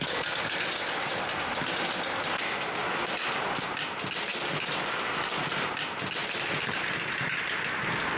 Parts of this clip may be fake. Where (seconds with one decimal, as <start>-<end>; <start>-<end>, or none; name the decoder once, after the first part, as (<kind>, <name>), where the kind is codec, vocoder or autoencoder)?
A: none